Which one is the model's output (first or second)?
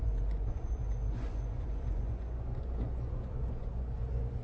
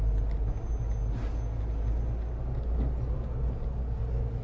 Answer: first